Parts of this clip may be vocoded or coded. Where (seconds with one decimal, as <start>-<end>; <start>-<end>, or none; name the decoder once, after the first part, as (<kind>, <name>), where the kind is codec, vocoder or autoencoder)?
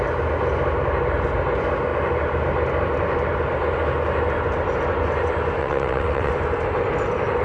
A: 5.6-6.3 (vocoder, WaveNeXt)